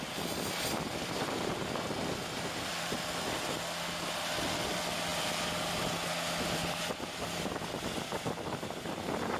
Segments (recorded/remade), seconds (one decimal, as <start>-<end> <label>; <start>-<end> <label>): 0.0-9.4 recorded